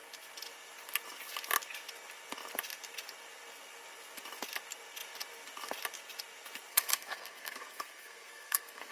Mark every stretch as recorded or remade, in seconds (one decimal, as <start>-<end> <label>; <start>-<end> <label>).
0.0-6.7 recorded; 6.7-8.9 remade